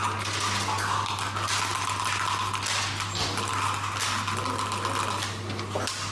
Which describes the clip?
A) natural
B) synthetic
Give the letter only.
A